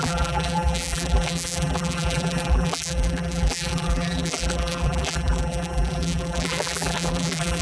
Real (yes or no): no